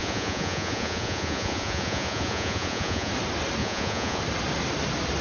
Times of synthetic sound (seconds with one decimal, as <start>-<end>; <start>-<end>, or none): 0.0-3.1; 3.6-4.2